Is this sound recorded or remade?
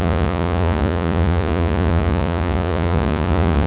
remade